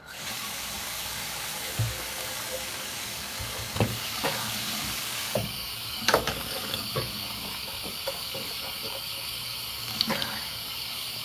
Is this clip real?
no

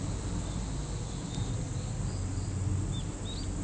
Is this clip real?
yes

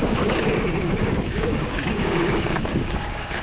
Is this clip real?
no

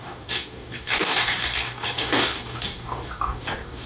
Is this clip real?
no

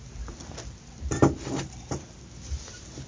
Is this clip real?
yes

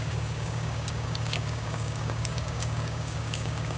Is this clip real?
no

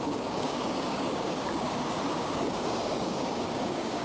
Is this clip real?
no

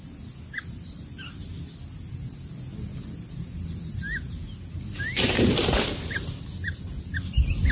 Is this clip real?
yes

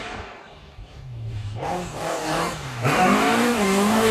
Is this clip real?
no